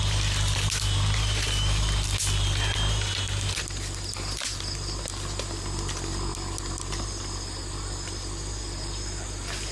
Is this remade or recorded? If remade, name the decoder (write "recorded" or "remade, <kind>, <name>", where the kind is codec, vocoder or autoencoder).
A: recorded